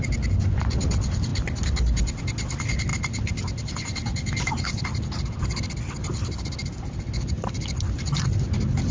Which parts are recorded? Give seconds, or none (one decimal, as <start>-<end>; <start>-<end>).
0.0-8.9